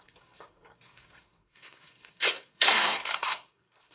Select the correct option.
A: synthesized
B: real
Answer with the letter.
A